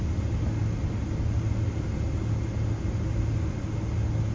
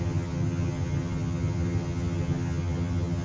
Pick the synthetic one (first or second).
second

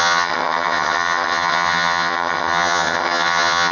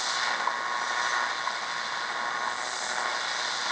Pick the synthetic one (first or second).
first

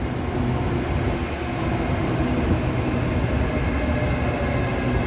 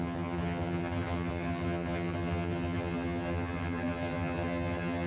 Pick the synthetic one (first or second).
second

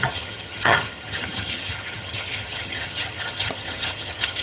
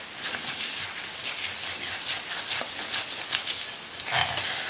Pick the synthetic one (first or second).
first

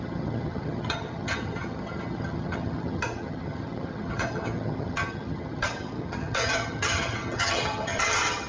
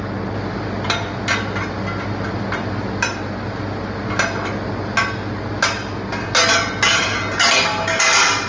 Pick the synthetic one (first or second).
first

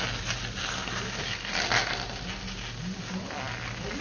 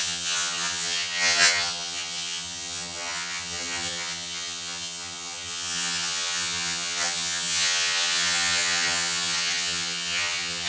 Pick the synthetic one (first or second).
second